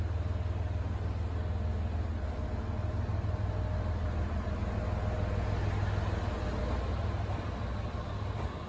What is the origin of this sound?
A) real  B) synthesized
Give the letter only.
A